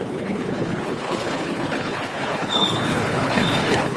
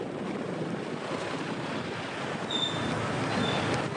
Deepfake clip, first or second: first